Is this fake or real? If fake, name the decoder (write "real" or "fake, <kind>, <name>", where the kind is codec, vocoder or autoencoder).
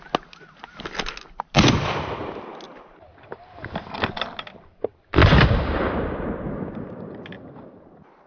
real